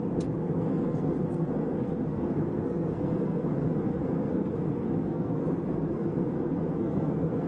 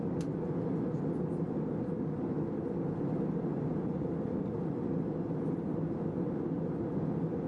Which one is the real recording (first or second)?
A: second